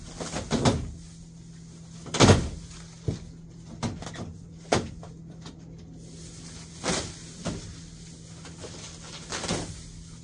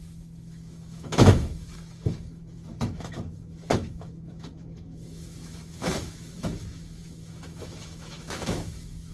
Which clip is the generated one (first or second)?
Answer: second